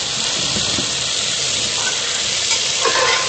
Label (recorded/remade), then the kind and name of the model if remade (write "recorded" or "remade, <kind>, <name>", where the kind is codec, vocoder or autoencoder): recorded